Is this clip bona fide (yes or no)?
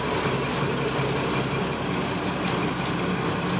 yes